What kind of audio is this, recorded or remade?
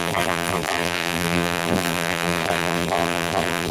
remade